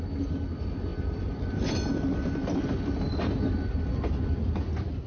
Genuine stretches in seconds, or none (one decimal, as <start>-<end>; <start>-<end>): 0.0-0.9; 4.0-5.1